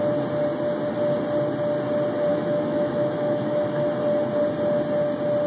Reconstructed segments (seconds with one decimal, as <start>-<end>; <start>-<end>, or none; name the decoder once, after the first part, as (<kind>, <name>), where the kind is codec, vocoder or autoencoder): 2.3-4.0 (autoencoder, DAC-VAE)